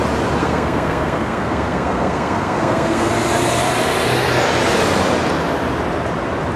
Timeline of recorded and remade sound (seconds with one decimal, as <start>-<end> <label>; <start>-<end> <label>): 0.0-0.4 recorded; 0.4-3.1 remade; 3.1-6.6 recorded